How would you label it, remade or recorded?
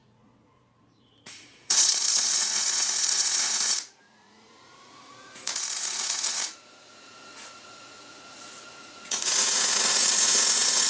remade